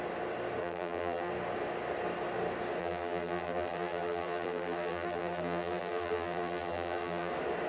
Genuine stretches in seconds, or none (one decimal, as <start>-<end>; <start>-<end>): 0.0-0.6; 1.3-2.8; 7.3-7.7